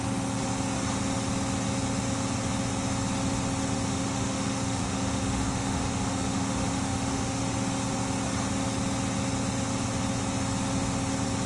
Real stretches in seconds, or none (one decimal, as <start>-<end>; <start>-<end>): 0.0-3.9; 7.4-11.5

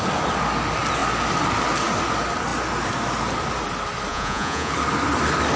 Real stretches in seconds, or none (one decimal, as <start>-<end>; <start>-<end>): 0.0-4.1; 4.7-5.6

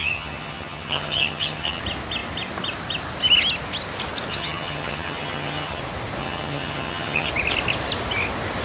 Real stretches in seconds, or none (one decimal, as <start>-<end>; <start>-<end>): 1.8-4.3; 5.8-6.2; 7.3-8.6

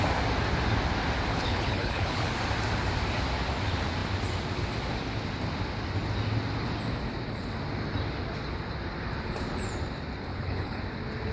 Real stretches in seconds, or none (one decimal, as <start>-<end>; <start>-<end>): 0.0-1.3; 2.3-10.3; 10.8-11.3

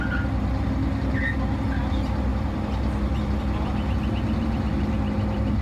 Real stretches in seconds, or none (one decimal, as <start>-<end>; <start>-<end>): 0.0-5.6